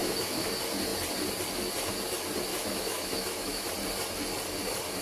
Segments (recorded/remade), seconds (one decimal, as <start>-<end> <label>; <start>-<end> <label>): 0.0-0.5 remade; 0.5-2.5 recorded; 2.5-3.7 remade; 3.7-5.0 recorded